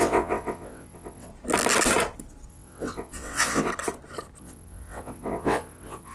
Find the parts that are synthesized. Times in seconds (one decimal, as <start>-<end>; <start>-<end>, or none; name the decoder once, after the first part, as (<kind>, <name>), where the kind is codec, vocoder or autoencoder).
0.0-1.3 (vocoder, WaveNeXt); 2.5-3.7; 4.4-6.1